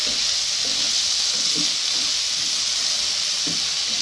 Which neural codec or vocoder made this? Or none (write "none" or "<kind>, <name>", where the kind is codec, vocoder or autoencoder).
none